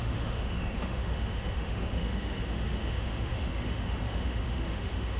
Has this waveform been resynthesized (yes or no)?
yes